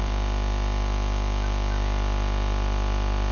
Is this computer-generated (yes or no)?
no